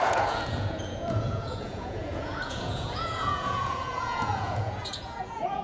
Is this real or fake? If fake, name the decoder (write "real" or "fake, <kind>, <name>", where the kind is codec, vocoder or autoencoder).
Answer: fake, vocoder, Vocos